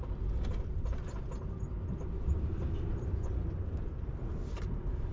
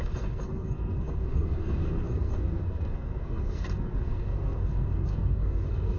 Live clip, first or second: first